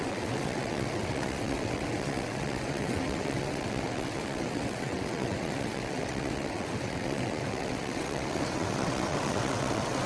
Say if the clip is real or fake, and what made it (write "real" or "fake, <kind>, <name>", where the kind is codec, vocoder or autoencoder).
fake, vocoder, WaveNeXt